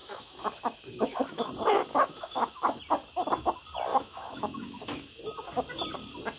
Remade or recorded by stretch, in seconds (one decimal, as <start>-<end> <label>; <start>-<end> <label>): 0.0-1.5 remade; 1.5-1.9 recorded; 1.9-2.8 remade; 2.8-3.9 recorded; 3.9-5.2 remade; 5.2-6.4 recorded